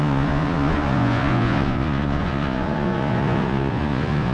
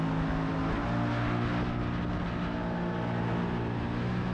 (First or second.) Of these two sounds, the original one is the second